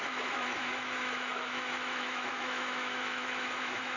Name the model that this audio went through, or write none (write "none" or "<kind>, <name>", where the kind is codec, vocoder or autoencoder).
autoencoder, DAC-VAE